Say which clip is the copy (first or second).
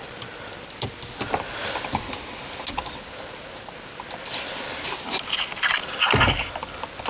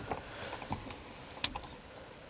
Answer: second